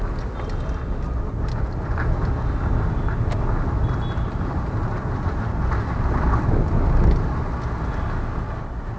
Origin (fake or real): real